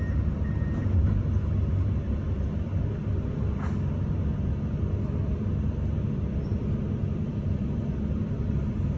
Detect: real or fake real